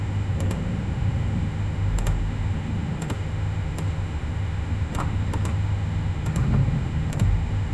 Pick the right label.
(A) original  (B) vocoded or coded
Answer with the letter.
B